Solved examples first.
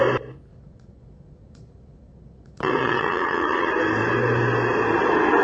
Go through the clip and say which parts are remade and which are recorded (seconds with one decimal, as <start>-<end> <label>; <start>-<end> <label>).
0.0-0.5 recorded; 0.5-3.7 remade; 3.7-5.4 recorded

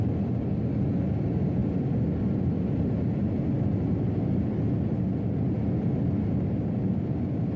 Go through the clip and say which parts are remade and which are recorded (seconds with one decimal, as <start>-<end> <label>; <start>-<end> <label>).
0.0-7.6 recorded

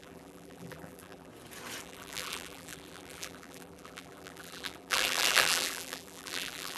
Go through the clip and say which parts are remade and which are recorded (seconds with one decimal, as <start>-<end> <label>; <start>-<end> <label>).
0.0-1.3 remade; 1.3-1.8 recorded; 1.8-6.8 remade

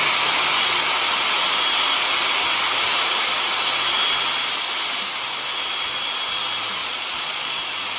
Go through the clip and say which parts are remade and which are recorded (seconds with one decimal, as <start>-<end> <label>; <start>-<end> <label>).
0.0-6.8 recorded; 6.8-7.6 remade; 7.6-8.0 recorded

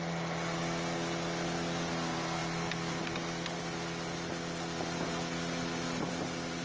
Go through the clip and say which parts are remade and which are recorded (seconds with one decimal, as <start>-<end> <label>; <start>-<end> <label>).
0.0-6.6 recorded

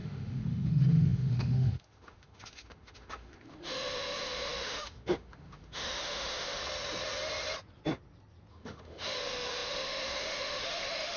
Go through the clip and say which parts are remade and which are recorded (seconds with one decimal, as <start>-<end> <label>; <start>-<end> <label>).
0.0-6.6 remade; 6.6-8.5 recorded; 8.5-11.2 remade

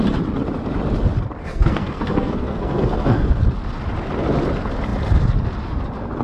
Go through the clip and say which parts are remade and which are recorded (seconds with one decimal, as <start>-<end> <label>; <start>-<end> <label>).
0.0-1.4 recorded; 1.4-3.3 remade; 3.3-6.2 recorded